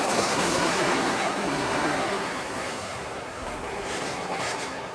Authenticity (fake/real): fake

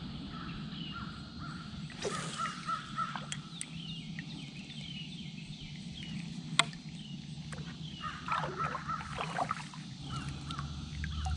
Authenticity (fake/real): real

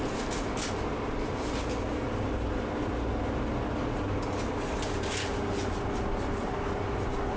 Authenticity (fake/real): real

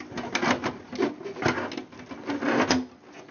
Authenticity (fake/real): real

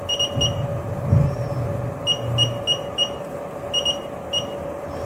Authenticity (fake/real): real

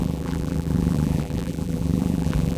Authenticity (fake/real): fake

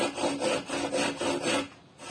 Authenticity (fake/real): real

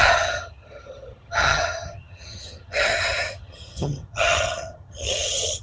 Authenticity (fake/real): fake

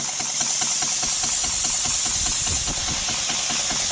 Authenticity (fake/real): real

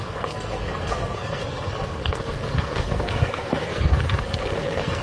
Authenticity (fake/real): fake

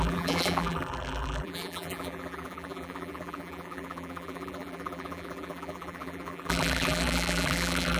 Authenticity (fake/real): fake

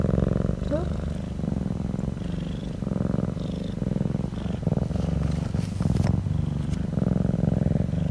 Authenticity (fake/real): real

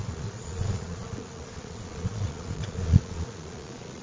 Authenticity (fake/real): fake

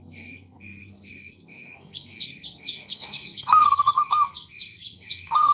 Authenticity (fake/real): fake